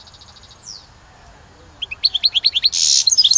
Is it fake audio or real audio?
real